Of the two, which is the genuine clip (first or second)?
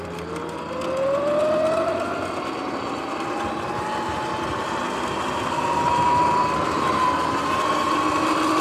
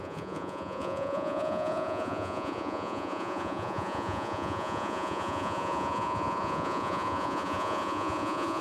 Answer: first